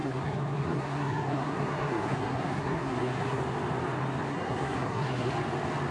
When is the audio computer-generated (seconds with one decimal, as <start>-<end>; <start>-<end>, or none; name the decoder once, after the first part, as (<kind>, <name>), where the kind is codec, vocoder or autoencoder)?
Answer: 0.0-3.4 (codec, SNAC); 4.3-5.3

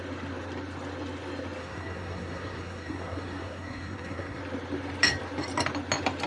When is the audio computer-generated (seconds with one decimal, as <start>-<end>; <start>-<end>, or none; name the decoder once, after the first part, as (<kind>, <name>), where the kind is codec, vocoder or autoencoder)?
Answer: 1.6-4.4 (codec, SNAC)

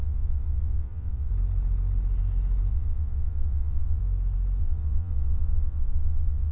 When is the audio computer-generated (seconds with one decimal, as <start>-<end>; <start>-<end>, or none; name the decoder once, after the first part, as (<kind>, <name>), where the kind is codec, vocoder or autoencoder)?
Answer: 0.0-1.3 (vocoder, WaveNeXt); 2.7-4.0; 4.6-6.5

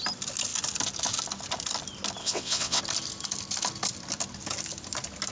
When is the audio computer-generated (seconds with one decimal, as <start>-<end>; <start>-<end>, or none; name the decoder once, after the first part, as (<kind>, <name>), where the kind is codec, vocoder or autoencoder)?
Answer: 2.2-2.8 (vocoder, WaveNeXt)

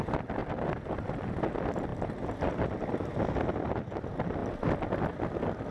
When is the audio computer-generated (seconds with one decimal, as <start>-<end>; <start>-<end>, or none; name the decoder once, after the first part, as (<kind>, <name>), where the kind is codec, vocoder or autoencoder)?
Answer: 0.4-1.1 (vocoder, BigVGAN v2); 4.4-5.1

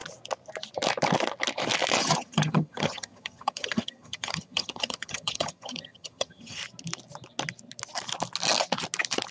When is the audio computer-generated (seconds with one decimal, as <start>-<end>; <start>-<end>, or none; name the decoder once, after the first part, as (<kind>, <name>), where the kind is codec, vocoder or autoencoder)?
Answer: 2.0-6.6 (vocoder, HiFi-GAN)

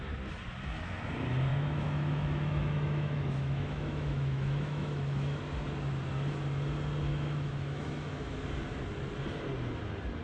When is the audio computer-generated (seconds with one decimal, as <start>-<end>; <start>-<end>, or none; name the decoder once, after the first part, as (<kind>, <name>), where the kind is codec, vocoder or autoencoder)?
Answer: 1.5-5.4 (autoencoder, DAC-VAE); 7.1-8.3